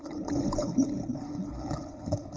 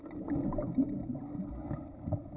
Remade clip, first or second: first